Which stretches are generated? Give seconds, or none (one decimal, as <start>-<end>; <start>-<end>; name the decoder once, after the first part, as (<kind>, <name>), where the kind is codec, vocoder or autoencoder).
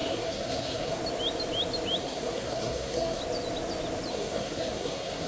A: 0.0-1.0 (codec, SNAC); 2.0-3.2; 4.1-5.3